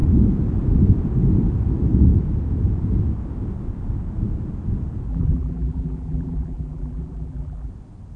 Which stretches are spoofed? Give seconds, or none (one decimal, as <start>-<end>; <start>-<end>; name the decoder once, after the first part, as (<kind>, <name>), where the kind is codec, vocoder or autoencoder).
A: 5.1-7.7 (vocoder, BigVGAN v2)